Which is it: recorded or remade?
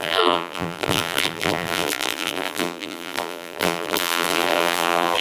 remade